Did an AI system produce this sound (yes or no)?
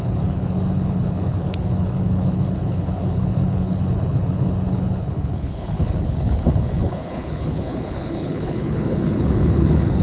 yes